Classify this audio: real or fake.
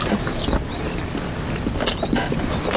real